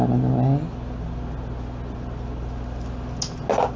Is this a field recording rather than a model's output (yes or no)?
yes